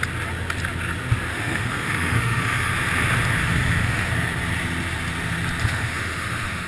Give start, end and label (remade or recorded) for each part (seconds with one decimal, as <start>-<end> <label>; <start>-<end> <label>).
0.0-1.3 recorded; 1.3-2.7 remade; 2.7-3.4 recorded; 3.4-4.1 remade; 4.1-5.6 recorded; 5.6-6.7 remade